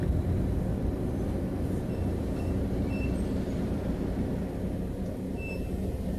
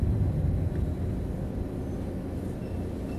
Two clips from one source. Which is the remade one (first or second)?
first